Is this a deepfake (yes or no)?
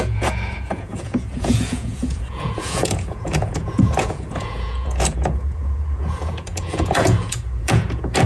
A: yes